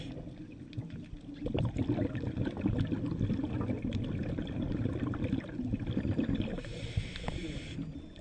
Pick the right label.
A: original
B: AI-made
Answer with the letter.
A